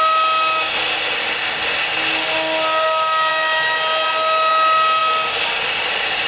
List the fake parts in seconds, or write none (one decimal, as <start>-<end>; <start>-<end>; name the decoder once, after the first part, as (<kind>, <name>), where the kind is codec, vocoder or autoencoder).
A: none